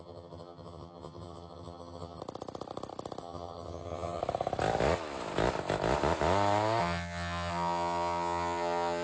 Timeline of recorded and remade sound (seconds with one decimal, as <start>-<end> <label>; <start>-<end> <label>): 0.0-2.2 remade; 2.2-3.2 recorded; 3.2-4.2 remade; 4.2-6.8 recorded; 6.8-9.0 remade

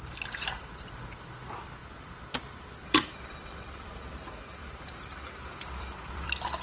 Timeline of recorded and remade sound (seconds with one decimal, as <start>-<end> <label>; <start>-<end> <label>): 0.0-6.6 remade

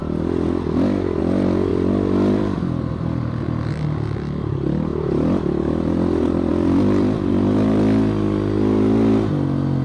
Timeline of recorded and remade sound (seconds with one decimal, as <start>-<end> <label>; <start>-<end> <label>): 0.0-1.7 recorded; 1.7-3.7 remade; 3.7-4.9 recorded; 4.9-5.6 remade; 5.6-6.5 recorded; 6.5-7.3 remade; 7.3-9.8 recorded

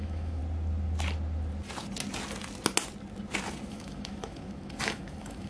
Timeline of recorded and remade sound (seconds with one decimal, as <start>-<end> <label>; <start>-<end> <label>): 0.0-0.4 remade; 0.4-3.7 recorded; 3.7-5.5 remade

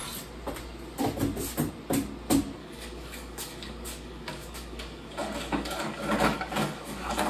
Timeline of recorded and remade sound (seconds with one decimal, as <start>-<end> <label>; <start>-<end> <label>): 0.0-2.6 recorded; 2.6-7.3 remade

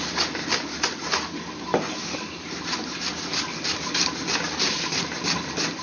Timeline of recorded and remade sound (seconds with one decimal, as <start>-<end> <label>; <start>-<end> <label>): 0.0-5.8 recorded

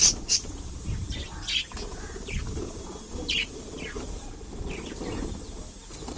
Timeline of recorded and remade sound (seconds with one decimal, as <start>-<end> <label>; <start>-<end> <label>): 0.0-0.9 remade; 0.9-1.9 recorded; 1.9-4.3 remade; 4.3-6.2 recorded

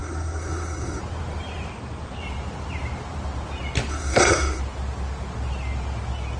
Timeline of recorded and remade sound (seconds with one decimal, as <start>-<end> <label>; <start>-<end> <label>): 0.0-1.0 remade; 1.0-3.9 recorded; 3.9-4.6 remade; 4.6-6.4 recorded